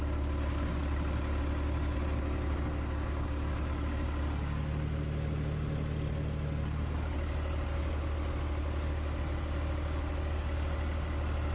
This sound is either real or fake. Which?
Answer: real